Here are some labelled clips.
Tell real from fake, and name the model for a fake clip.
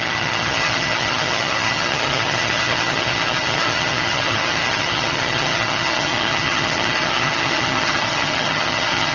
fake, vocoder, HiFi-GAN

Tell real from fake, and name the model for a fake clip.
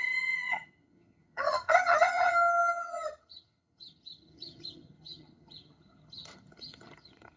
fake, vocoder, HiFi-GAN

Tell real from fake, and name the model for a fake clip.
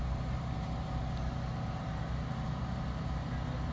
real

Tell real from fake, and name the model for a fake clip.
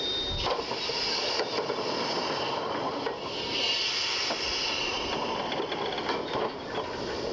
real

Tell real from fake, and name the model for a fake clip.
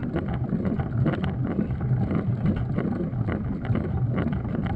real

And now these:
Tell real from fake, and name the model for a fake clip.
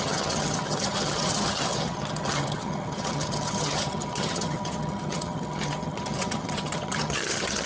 fake, vocoder, HiFi-GAN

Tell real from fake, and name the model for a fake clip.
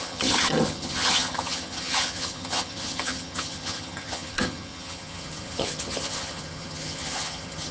fake, vocoder, HiFi-GAN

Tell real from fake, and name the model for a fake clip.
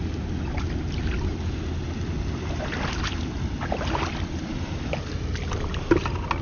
real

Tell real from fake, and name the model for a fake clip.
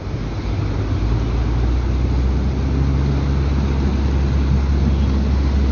real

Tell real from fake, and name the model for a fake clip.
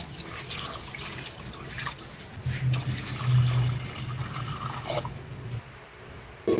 real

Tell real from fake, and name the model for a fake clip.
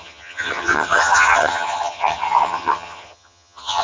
fake, vocoder, HiFi-GAN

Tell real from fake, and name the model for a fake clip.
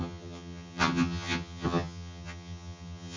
fake, vocoder, HiFi-GAN